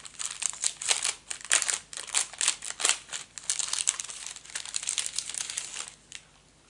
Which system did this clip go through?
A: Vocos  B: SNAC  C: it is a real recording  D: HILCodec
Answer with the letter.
C